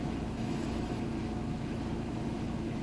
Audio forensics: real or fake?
fake